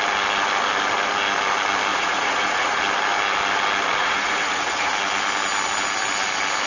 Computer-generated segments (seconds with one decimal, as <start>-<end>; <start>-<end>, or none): 1.9-2.8; 4.0-4.9